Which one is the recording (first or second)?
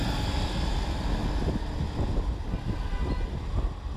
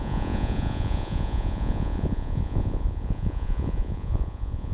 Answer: first